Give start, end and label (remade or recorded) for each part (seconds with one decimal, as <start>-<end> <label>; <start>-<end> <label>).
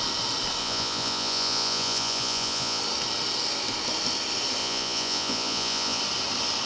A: 0.0-0.6 recorded; 0.6-2.8 remade; 2.8-4.6 recorded; 4.6-6.0 remade; 6.0-6.7 recorded